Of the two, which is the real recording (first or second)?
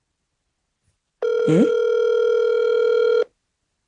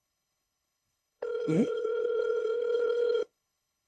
first